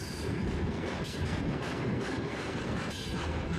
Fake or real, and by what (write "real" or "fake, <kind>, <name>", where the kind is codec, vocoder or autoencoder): fake, codec, SNAC